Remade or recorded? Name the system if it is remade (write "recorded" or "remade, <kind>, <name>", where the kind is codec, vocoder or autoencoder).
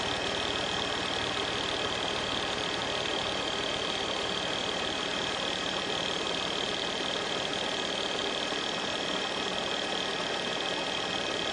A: remade, vocoder, BigVGAN v2